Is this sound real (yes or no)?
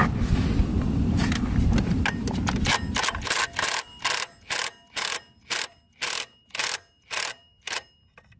yes